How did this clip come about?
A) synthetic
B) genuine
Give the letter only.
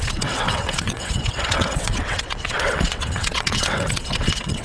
A